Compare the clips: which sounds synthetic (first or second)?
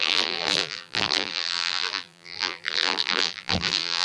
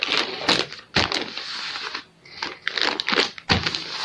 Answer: first